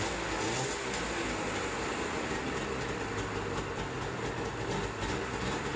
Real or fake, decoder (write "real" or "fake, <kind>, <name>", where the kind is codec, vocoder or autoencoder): real